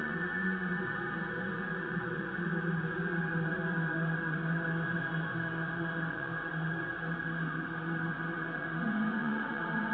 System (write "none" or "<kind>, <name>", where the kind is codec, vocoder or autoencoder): vocoder, Vocos